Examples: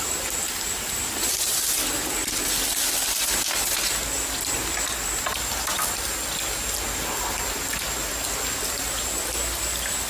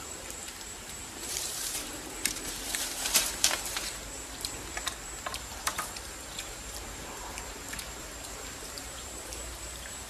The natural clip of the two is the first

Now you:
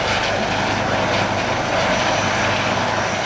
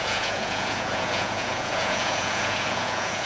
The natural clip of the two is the first